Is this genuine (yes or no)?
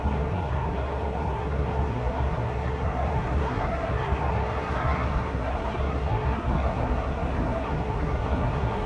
no